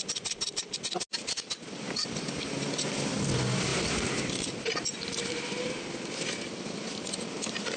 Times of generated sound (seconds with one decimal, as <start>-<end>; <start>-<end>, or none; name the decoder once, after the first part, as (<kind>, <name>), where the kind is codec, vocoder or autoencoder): none